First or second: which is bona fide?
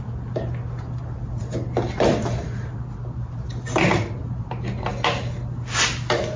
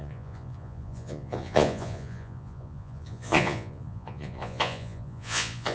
first